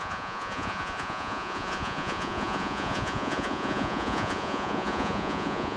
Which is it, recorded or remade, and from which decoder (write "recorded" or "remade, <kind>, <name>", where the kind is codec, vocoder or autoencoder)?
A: remade, vocoder, Vocos